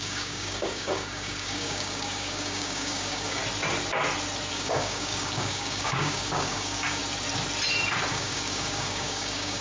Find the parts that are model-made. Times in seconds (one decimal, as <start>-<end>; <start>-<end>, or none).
0.0-3.4; 4.5-7.0; 8.1-9.6